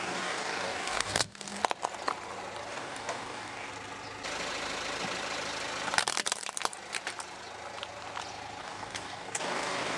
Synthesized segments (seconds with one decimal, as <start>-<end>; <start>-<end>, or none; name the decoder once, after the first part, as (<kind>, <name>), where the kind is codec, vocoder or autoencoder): 0.0-1.6 (codec, DAC); 2.7-3.7; 8.6-10.0